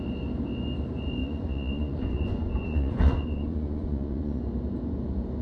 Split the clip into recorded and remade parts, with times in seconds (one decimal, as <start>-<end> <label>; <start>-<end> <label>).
0.0-1.2 recorded; 1.2-4.4 remade; 4.4-5.4 recorded